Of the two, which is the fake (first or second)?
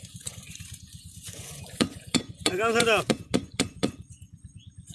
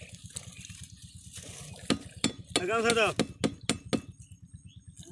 first